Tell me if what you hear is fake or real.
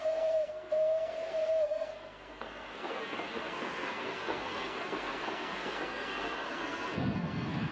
fake